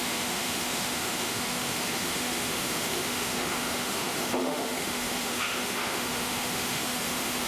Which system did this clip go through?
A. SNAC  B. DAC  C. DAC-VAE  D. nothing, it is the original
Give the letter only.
C